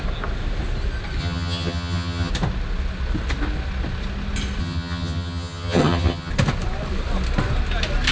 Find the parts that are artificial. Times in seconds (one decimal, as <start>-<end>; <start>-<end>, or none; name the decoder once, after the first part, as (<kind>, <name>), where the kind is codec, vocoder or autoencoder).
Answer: 1.2-2.3 (vocoder, HiFi-GAN); 4.6-6.3